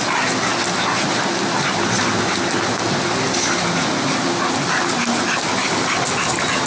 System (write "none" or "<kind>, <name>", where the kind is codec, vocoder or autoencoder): none